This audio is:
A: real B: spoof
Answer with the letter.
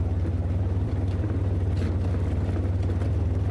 A